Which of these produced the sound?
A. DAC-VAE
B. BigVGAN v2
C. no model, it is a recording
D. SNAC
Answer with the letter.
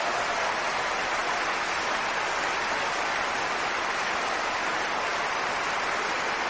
C